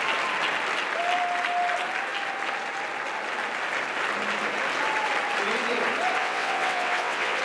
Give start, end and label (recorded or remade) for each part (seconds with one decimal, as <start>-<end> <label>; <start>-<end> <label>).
0.0-6.2 recorded; 6.2-7.4 remade